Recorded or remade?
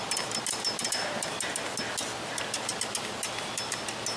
recorded